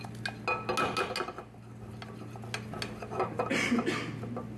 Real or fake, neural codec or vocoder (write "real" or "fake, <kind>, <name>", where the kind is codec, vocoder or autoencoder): real